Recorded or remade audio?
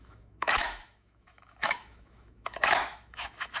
remade